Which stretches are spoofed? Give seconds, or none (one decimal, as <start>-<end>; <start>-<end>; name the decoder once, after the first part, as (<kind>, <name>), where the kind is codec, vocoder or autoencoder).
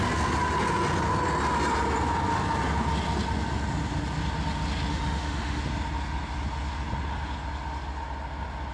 4.9-5.6 (autoencoder, DAC-VAE)